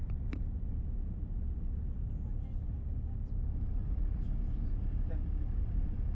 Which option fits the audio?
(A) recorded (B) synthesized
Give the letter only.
A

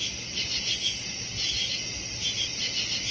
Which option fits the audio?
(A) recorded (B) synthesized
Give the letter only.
A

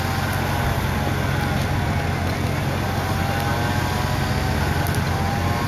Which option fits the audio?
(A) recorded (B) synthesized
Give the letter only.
A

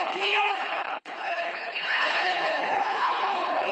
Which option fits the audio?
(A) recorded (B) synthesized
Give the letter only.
B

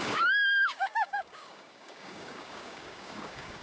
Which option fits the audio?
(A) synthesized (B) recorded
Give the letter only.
A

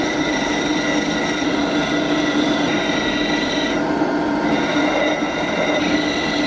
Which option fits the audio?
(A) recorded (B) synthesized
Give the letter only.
A